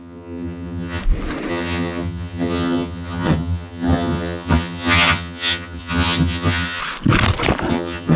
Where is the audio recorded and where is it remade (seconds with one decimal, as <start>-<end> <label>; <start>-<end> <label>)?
0.0-1.0 remade; 1.0-1.5 recorded; 1.5-6.8 remade; 6.8-7.7 recorded; 7.7-8.2 remade